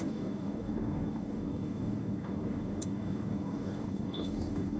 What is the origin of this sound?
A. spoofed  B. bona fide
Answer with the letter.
A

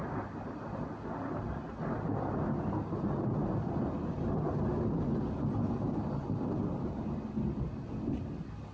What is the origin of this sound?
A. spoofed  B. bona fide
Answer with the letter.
B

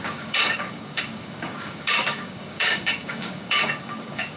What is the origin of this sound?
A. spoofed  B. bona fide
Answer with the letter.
A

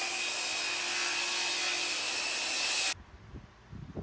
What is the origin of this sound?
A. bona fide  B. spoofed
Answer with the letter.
A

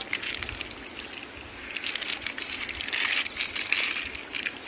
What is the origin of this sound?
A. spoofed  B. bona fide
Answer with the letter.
B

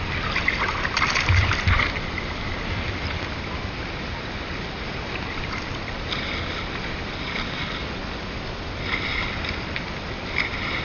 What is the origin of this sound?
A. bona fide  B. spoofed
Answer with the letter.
A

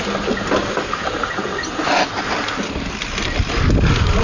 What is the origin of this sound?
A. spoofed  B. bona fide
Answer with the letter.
B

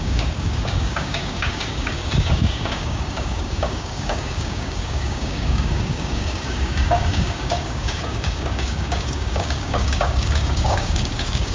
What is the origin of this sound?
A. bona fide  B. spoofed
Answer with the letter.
B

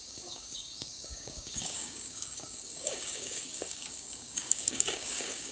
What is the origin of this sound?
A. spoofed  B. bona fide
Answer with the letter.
A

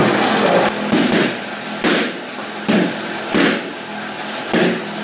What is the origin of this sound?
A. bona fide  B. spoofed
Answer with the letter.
A